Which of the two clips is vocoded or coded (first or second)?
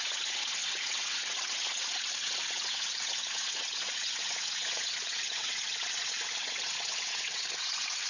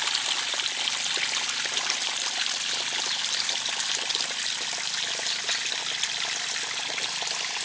first